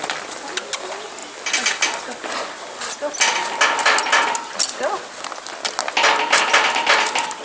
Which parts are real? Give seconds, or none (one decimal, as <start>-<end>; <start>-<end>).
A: 0.0-7.4

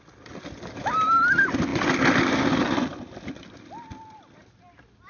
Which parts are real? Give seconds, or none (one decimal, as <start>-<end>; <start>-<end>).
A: 0.0-5.1